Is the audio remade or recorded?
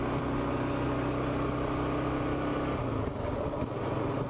recorded